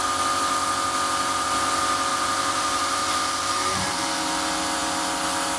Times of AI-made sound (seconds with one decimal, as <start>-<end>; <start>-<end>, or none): 2.1-4.1

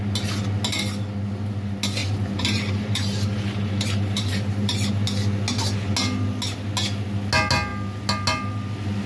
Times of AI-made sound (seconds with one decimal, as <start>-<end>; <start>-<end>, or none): 2.0-4.9

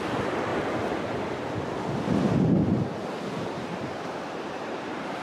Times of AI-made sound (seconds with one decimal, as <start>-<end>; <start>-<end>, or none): 3.0-5.2